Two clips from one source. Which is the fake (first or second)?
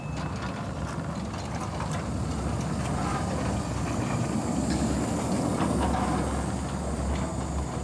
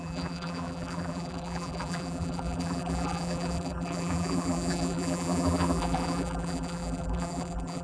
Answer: second